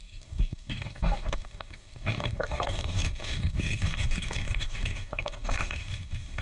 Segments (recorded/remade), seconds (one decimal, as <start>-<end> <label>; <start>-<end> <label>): 0.0-6.4 remade